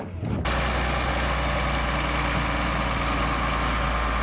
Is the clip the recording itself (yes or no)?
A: yes